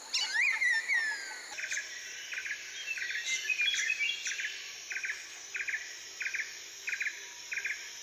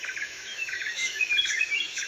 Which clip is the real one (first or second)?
first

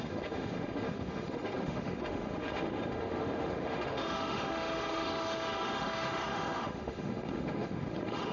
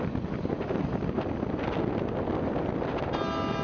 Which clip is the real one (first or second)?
second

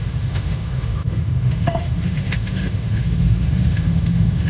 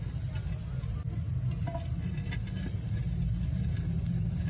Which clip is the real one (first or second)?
second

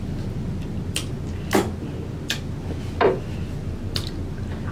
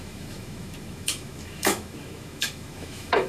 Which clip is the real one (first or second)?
first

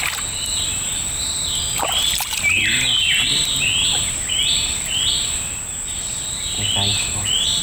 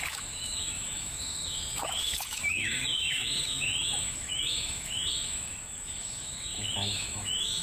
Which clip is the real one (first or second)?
first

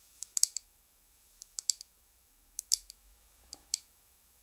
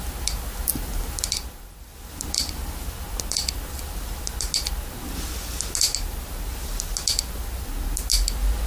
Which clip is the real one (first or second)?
second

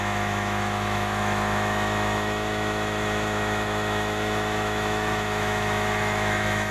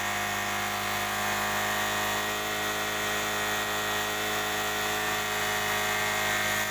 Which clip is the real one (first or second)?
second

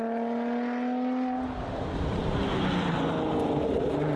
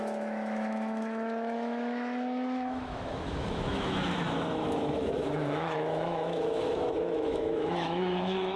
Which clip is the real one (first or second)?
first